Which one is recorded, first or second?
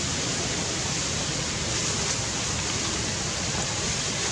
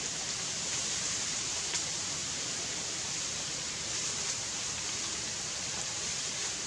first